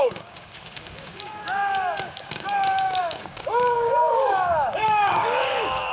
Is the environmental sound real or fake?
fake